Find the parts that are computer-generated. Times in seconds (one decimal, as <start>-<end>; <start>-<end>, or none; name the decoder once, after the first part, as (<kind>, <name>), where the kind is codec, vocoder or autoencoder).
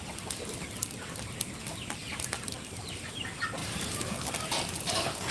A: 3.6-4.1 (vocoder, BigVGAN v2)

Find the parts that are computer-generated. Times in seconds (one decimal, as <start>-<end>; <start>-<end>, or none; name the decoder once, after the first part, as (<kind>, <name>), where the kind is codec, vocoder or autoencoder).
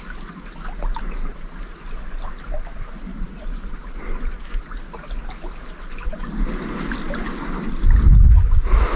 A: 3.1-3.6 (vocoder, BigVGAN v2)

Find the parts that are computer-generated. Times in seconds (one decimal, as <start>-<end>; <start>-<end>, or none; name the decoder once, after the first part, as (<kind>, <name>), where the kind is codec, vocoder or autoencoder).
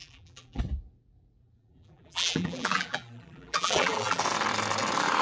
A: 0.0-0.6 (vocoder, BigVGAN v2); 1.4-4.2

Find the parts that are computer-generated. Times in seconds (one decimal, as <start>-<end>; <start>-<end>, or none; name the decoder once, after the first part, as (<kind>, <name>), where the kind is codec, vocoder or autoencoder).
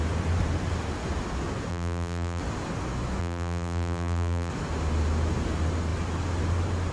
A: 1.7-2.4 (vocoder, BigVGAN v2); 3.2-4.5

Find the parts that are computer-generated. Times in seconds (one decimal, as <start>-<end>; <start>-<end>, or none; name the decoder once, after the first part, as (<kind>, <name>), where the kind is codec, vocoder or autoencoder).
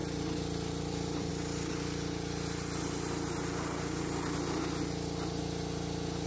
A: 0.0-1.3 (vocoder, BigVGAN v2)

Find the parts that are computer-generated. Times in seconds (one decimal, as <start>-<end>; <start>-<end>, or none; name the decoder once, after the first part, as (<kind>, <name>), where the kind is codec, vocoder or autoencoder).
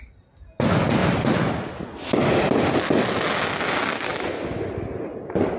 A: none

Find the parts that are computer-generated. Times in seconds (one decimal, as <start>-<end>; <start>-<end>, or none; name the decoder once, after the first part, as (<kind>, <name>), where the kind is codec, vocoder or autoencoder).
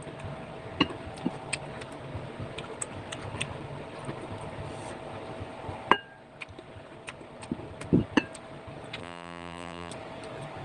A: 9.0-9.9 (vocoder, BigVGAN v2)